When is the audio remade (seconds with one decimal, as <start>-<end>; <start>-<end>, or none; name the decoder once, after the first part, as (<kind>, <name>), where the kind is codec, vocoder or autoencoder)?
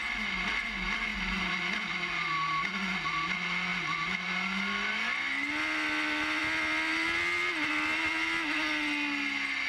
none